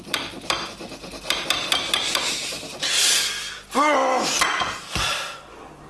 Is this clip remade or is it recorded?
recorded